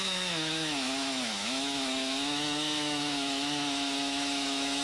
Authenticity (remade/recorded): remade